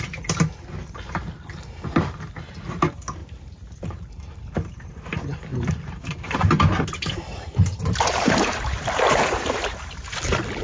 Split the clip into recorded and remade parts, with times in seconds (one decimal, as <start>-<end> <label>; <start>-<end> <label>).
0.0-3.2 recorded; 3.2-4.1 remade; 4.1-5.5 recorded; 5.5-9.9 remade; 9.9-10.6 recorded